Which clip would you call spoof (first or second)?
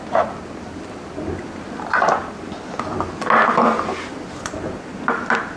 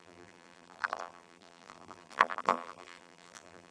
second